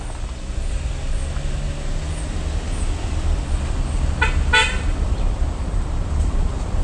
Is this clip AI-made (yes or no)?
no